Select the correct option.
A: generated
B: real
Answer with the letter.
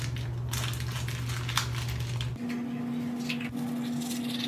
B